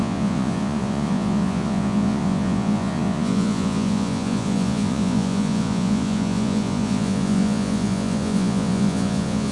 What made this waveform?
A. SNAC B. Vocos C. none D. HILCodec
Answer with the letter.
B